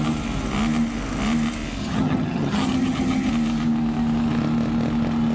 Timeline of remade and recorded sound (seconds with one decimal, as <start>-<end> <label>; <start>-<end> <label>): 0.0-1.8 recorded; 1.8-3.3 remade; 3.3-5.3 recorded